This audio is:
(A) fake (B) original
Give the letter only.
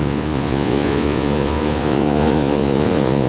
A